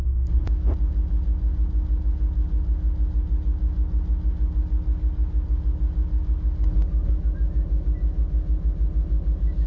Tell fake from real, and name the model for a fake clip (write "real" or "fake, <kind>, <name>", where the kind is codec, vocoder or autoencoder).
real